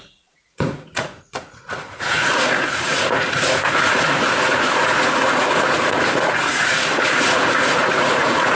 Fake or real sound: fake